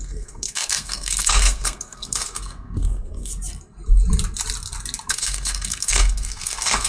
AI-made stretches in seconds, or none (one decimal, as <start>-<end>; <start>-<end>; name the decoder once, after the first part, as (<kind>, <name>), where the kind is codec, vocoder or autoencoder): 0.0-3.3 (codec, SNAC); 5.1-6.9